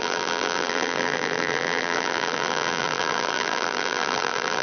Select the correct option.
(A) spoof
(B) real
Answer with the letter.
A